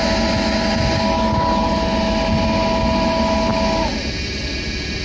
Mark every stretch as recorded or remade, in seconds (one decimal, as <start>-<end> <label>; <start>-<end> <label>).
0.0-5.0 recorded